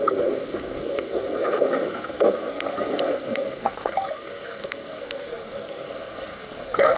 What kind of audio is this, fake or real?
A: fake